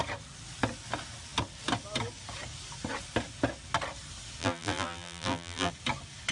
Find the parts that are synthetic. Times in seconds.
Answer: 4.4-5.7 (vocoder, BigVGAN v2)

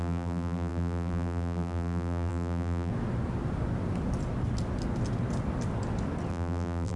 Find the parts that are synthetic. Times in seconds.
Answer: 0.0-2.9 (vocoder, BigVGAN v2); 6.3-7.0

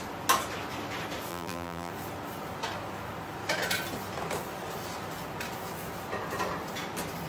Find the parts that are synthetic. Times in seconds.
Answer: 1.3-1.9 (vocoder, BigVGAN v2)

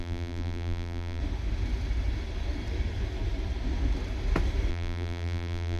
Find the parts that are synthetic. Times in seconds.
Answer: 0.0-1.2 (vocoder, BigVGAN v2); 4.7-5.8